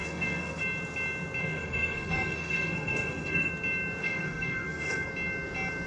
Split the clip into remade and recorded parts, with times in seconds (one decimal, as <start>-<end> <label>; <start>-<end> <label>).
0.0-0.6 remade; 0.6-1.4 recorded; 1.4-3.5 remade; 3.5-4.0 recorded; 4.0-5.1 remade; 5.1-5.9 recorded